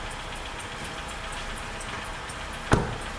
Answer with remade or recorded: recorded